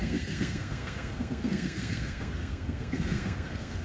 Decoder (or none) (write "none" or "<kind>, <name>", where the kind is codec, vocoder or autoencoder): codec, SNAC